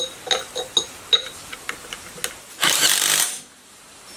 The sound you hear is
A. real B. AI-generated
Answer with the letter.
A